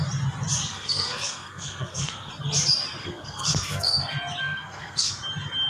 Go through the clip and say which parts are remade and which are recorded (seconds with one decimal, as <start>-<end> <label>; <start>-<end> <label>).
0.0-0.7 recorded; 0.7-2.3 remade; 2.3-3.0 recorded; 3.0-4.0 remade; 4.0-4.4 recorded; 4.4-5.2 remade; 5.2-5.7 recorded